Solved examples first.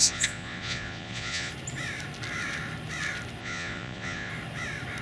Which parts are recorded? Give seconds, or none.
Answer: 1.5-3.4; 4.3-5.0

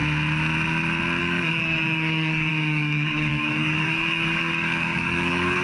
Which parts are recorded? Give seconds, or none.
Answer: 0.0-1.2

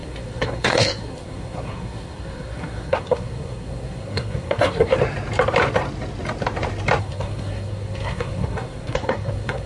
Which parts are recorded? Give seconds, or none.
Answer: 4.9-7.0

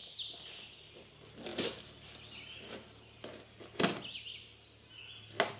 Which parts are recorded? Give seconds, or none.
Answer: 0.0-5.6

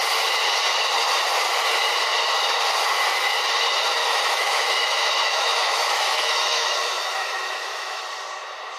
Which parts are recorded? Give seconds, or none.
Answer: 0.0-4.0; 8.0-8.8

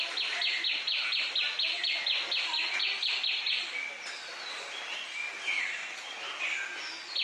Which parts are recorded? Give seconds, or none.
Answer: 0.0-0.9; 1.5-7.2

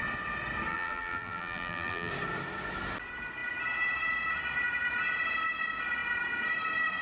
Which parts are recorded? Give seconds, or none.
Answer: 0.0-0.7; 2.1-7.0

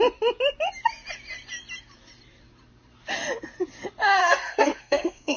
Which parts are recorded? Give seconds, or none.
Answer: 0.0-4.2